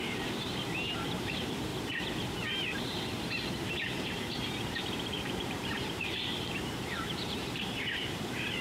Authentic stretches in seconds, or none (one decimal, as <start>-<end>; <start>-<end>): 1.7-3.5